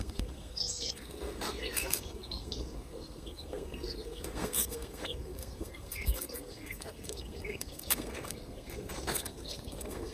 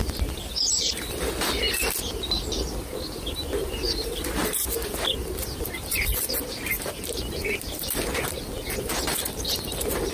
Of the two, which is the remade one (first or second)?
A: first